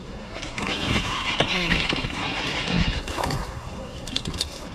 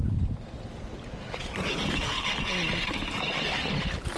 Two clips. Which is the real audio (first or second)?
second